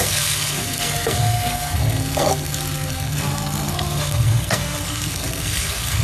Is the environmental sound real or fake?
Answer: fake